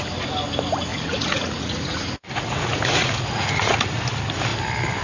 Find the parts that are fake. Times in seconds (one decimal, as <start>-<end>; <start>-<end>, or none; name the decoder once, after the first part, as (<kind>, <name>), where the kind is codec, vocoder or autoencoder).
0.9-3.9 (vocoder, Vocos)